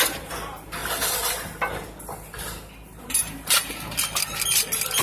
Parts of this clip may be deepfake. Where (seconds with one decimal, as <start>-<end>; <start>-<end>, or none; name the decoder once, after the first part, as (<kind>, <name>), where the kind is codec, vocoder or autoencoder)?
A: none